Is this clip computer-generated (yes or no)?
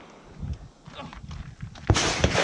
no